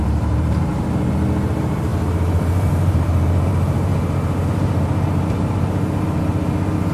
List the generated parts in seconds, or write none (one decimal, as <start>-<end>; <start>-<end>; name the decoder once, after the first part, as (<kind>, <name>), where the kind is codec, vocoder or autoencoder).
0.0-0.7 (vocoder, BigVGAN v2); 1.5-3.9; 4.5-6.9